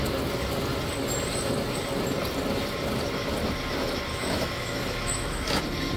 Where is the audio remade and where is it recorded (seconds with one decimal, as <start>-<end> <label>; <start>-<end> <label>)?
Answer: 0.0-4.1 recorded; 4.1-5.6 remade; 5.6-6.0 recorded